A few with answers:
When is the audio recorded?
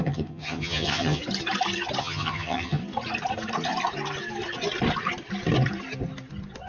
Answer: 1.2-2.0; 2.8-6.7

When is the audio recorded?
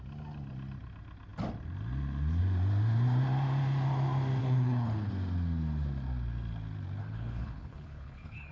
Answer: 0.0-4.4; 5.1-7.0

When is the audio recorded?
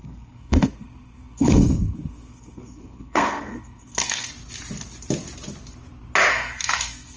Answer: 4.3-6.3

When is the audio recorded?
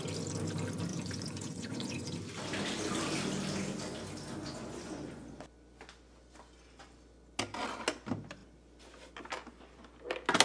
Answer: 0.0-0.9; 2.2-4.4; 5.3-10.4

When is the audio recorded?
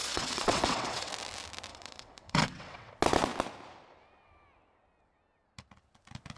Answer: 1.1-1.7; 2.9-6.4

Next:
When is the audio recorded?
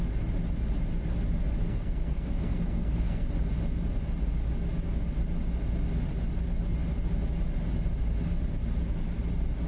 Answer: 0.0-1.6; 3.3-9.7